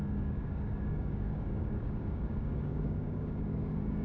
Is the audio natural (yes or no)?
no